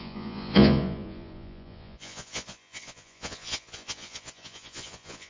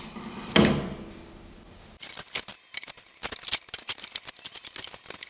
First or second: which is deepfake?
first